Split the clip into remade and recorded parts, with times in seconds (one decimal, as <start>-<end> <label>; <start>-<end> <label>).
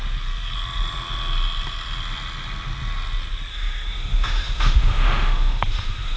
0.0-3.5 recorded; 3.5-6.2 remade